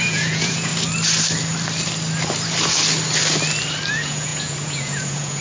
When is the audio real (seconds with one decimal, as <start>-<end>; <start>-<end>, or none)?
0.7-3.9